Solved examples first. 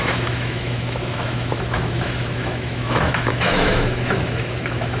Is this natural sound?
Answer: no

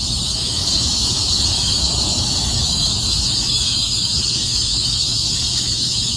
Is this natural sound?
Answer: no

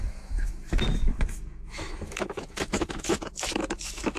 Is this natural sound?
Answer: no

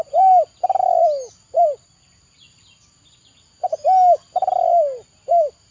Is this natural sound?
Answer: yes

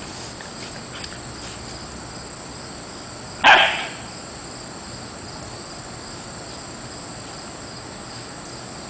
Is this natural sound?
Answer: yes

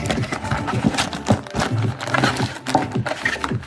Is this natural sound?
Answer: yes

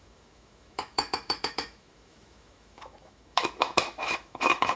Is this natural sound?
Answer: no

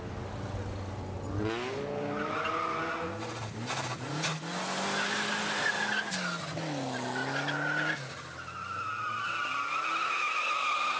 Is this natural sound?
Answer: yes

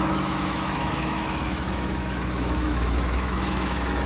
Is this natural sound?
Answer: no